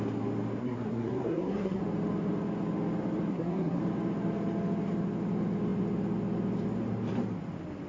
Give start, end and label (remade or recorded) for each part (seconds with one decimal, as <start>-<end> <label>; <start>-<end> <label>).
0.0-0.6 recorded; 0.6-1.8 remade; 1.8-3.3 recorded; 3.3-3.8 remade; 3.8-7.9 recorded